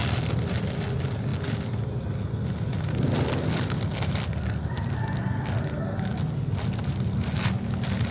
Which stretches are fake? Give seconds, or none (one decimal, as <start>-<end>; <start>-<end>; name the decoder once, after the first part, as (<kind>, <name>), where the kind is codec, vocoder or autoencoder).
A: none